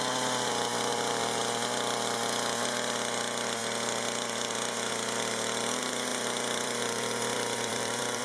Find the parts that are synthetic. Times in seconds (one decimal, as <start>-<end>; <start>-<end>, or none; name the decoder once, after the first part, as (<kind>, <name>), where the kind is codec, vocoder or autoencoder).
0.9-1.5 (vocoder, BigVGAN v2); 6.1-8.2